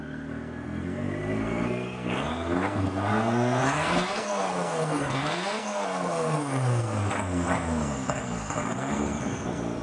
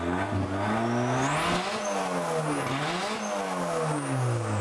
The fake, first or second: first